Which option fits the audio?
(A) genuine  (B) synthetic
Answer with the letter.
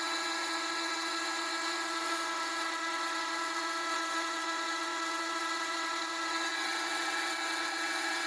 B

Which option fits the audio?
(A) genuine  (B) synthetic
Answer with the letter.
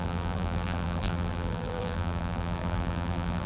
B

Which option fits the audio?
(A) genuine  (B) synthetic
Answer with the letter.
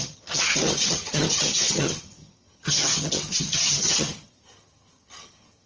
B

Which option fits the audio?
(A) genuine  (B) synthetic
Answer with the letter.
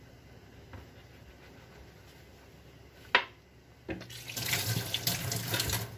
A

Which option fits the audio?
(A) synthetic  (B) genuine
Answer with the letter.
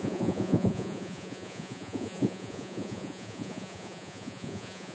A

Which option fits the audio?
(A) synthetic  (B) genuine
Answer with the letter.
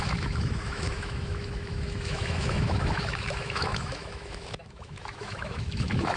A